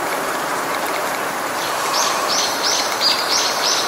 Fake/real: fake